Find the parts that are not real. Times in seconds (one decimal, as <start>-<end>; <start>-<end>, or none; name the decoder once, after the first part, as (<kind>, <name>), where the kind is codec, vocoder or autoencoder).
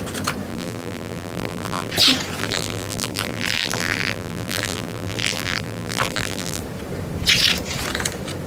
0.5-1.9 (vocoder, BigVGAN v2); 2.4-6.6